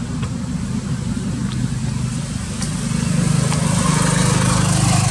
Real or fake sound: real